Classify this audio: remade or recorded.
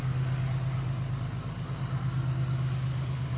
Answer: recorded